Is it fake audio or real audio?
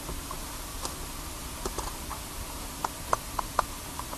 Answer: real